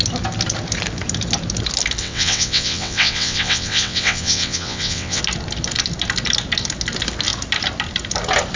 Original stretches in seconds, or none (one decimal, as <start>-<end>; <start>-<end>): 0.0-2.0; 5.2-8.6